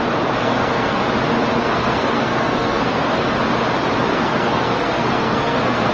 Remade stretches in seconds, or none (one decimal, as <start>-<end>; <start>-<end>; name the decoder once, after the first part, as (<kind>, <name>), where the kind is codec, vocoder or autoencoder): 0.4-1.0 (codec, SNAC); 1.6-3.1; 4.1-5.9